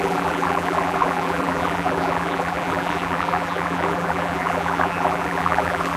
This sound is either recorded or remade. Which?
remade